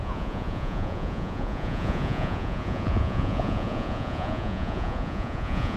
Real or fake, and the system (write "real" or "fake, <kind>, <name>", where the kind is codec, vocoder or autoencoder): fake, vocoder, Vocos